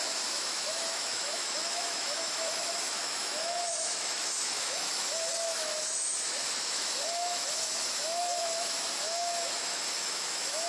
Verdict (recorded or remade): remade